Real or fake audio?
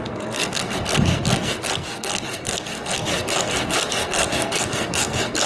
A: fake